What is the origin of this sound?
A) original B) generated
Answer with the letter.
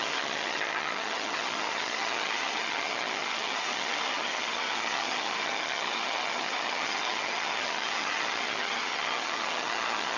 B